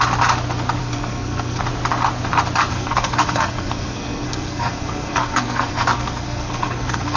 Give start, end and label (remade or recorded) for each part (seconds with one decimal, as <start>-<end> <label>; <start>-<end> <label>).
0.0-0.8 recorded; 0.8-1.6 remade; 1.6-2.7 recorded; 2.7-7.2 remade